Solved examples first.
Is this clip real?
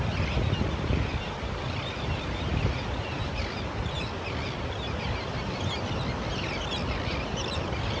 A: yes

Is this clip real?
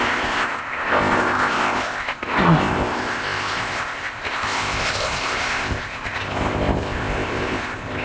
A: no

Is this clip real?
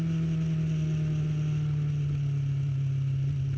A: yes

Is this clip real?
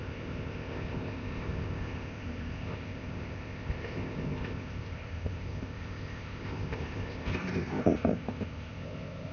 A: no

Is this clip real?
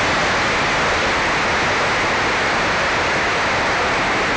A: yes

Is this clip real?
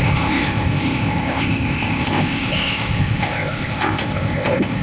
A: no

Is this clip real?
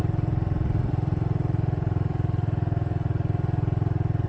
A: yes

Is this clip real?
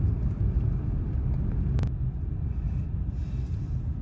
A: yes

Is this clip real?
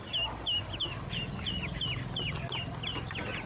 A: yes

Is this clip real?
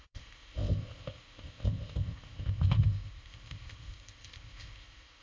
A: no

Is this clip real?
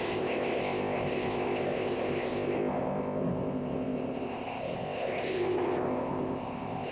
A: no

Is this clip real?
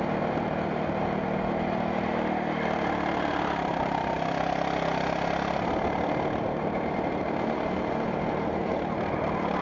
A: yes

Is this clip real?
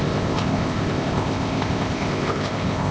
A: no